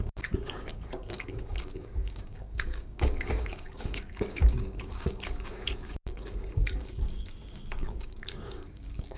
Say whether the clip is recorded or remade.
remade